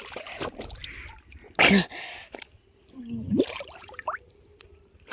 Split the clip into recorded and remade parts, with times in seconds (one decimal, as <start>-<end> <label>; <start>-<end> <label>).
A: 0.0-0.8 remade; 0.8-3.5 recorded; 3.5-5.1 remade